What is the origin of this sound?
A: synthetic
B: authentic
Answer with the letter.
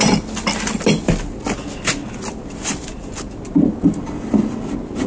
B